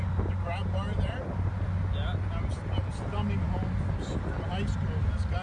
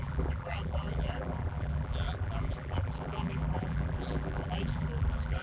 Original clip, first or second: first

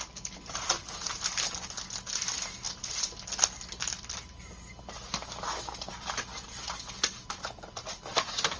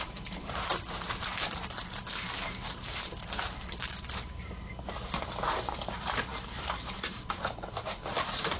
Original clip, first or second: first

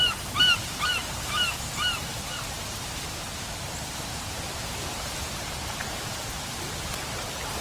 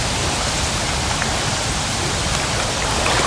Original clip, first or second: second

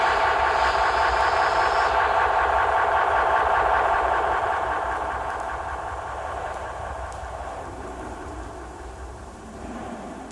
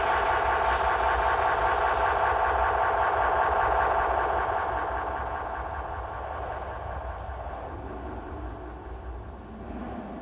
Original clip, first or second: second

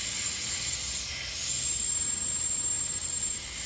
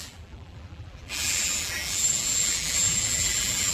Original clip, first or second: first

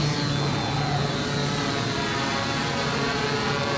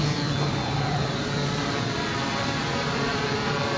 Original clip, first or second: first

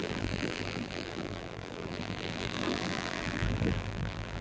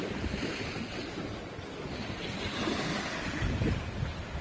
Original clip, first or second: second